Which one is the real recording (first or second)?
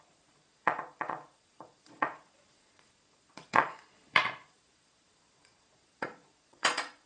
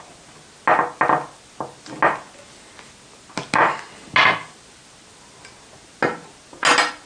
second